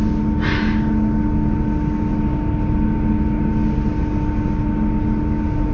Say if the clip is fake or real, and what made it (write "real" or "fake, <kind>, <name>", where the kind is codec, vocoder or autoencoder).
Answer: real